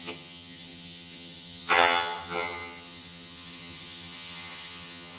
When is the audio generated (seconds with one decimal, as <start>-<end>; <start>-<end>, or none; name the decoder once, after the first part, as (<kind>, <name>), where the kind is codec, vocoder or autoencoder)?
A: 0.0-5.2 (vocoder, HiFi-GAN)